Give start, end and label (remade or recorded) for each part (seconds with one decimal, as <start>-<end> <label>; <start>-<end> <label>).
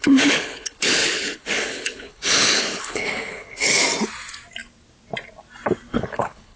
0.0-3.8 remade; 3.8-5.9 recorded; 5.9-6.6 remade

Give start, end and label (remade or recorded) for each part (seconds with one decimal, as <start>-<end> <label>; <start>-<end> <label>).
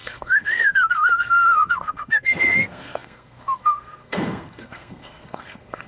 0.0-5.9 remade